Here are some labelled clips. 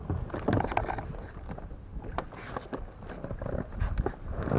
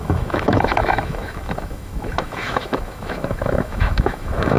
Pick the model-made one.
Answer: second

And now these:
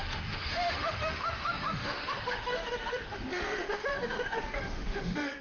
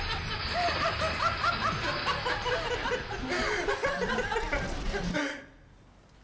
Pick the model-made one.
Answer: first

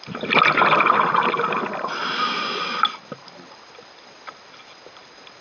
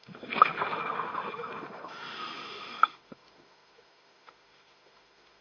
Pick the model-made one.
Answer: second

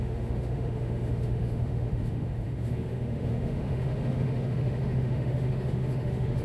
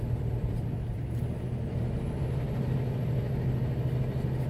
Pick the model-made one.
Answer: first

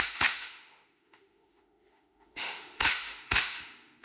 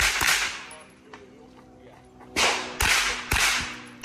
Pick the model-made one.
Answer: first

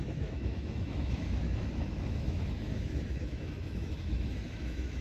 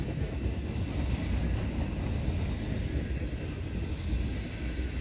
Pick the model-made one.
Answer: first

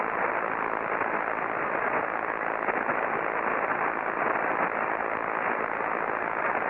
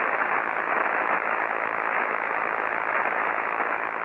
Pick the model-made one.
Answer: second